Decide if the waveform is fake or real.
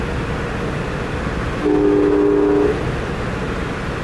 real